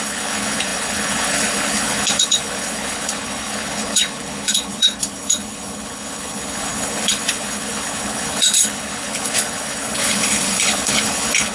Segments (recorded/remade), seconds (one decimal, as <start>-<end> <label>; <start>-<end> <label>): 0.0-11.5 remade

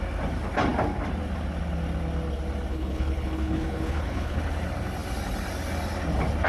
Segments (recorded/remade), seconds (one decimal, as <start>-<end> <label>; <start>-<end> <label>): 0.0-2.7 recorded; 2.7-4.4 remade; 4.4-6.5 recorded